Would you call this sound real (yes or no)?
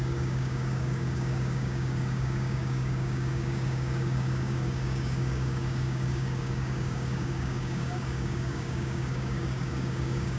no